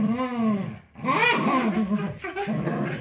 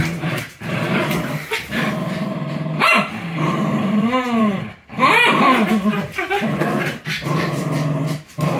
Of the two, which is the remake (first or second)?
second